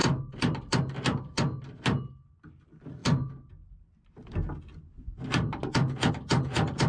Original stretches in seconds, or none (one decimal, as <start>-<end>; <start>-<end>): 0.0-6.9